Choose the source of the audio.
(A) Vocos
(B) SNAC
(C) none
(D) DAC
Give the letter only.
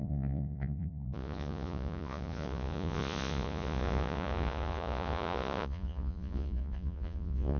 A